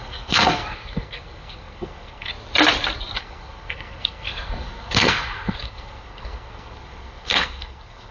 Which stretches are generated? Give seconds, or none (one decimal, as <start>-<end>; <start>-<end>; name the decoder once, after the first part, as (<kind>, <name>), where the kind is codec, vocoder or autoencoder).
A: 0.0-2.3 (codec, SNAC); 3.2-8.1